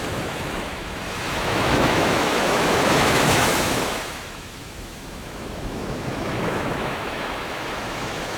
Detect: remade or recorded remade